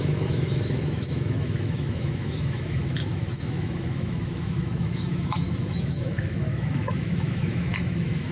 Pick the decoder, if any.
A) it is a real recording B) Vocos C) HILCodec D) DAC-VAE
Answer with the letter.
D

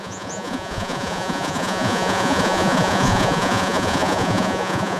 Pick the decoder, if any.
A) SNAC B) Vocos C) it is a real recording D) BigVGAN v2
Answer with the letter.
B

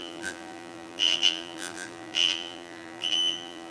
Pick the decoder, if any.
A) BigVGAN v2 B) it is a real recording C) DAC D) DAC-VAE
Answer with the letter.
A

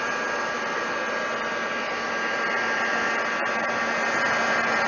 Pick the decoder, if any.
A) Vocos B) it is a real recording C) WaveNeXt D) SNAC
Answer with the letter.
B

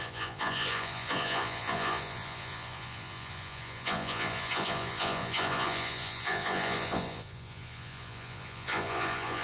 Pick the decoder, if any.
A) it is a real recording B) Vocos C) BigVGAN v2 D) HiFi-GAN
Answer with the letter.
B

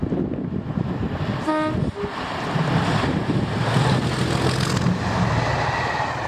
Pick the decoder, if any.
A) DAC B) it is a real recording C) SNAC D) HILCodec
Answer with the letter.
B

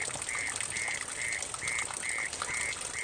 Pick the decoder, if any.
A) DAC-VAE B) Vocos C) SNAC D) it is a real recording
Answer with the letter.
D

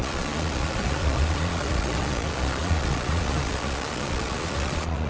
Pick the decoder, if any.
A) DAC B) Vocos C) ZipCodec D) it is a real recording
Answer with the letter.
B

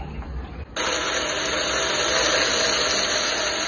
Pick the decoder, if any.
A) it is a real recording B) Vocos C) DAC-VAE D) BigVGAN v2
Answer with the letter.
A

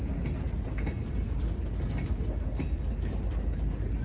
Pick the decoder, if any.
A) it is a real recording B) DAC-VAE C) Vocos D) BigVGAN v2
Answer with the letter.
A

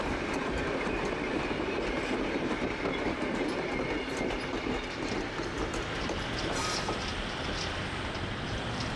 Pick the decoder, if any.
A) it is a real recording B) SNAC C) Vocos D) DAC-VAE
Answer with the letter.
A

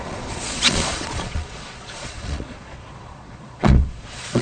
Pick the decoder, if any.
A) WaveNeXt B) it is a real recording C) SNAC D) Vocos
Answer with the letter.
D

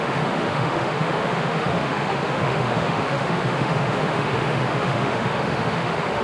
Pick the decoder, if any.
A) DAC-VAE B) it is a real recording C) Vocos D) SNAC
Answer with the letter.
A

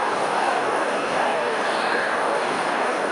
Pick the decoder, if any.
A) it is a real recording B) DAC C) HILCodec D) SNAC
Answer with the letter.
B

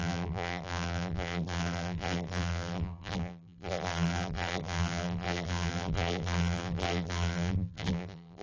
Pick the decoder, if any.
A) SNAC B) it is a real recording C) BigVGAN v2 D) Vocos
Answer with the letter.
C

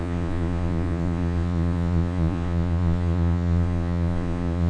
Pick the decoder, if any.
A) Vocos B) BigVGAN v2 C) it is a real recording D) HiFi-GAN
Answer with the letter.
A